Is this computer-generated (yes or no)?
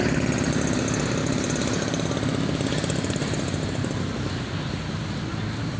no